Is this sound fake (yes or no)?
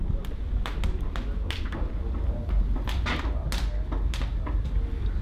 no